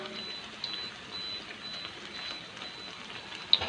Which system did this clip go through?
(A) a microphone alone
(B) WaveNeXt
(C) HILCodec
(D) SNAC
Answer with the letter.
A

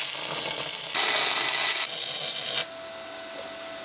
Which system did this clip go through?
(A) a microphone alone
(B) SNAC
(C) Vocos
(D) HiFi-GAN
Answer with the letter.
A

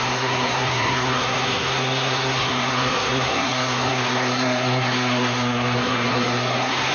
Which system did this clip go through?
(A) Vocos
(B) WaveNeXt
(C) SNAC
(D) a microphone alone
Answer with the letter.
C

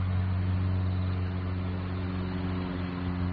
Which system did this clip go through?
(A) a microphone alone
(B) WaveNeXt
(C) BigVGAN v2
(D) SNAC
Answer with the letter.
A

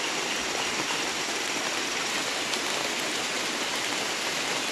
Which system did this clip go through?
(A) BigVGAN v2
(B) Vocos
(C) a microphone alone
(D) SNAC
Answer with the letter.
C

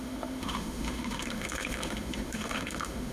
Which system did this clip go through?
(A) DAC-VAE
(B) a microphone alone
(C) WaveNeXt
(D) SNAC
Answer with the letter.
A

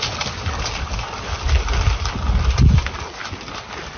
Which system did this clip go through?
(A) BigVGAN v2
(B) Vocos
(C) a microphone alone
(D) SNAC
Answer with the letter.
C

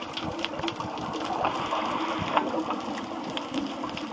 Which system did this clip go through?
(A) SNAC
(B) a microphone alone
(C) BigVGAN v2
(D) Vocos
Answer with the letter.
B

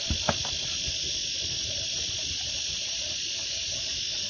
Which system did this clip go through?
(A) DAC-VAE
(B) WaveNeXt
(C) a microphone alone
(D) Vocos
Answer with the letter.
C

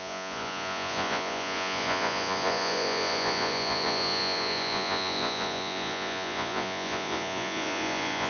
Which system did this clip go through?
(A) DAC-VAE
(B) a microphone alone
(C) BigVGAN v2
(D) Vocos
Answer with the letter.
D